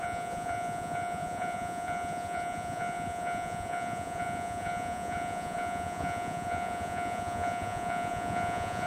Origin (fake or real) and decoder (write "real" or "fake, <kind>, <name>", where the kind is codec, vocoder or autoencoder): fake, vocoder, Vocos